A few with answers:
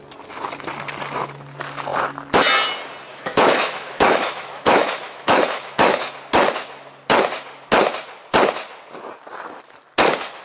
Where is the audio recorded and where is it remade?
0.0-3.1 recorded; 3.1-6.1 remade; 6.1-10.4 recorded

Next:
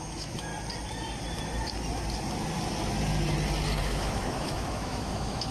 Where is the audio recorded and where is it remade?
0.0-0.5 remade; 0.5-3.8 recorded; 3.8-5.5 remade

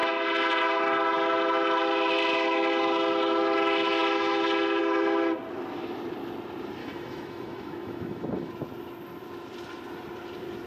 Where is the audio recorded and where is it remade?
0.0-6.8 recorded; 6.8-8.5 remade; 8.5-10.7 recorded